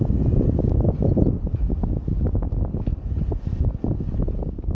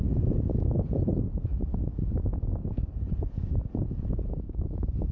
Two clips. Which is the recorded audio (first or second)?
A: first